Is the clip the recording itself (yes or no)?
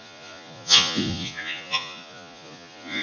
no